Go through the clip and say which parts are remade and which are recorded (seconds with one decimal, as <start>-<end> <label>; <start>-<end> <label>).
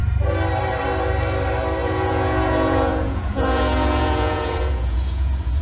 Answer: 0.0-1.8 recorded; 1.8-5.6 remade